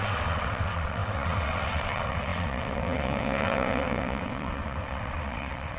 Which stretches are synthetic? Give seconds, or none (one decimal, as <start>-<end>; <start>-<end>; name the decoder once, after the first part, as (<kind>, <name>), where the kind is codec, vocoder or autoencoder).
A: 0.0-5.8 (vocoder, WaveNeXt)